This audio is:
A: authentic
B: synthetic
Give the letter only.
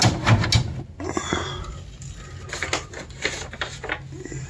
A